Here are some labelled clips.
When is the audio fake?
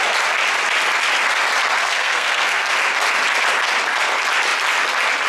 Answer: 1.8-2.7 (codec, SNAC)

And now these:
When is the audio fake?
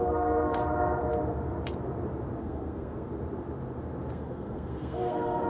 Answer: 0.0-0.6 (codec, SNAC); 2.4-3.1; 4.1-5.5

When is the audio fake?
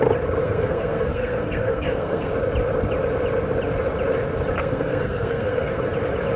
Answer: 0.4-2.3 (codec, SNAC); 4.6-5.8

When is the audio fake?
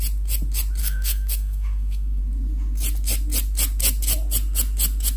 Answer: 0.8-2.2 (codec, SNAC)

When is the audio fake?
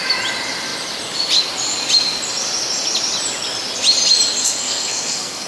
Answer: 4.4-5.5 (codec, SNAC)